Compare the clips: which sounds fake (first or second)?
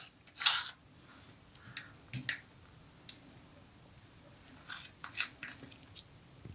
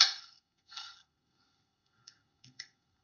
second